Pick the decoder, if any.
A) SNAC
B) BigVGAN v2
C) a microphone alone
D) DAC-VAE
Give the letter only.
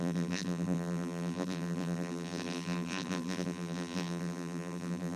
B